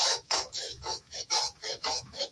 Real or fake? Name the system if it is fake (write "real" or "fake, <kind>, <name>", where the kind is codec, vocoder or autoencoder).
fake, autoencoder, DAC-VAE